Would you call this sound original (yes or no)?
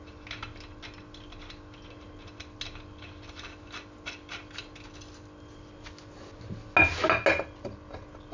yes